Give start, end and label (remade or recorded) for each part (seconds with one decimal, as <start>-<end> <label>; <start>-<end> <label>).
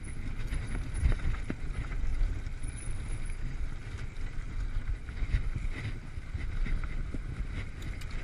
0.0-2.1 recorded; 2.1-3.4 remade; 3.4-8.2 recorded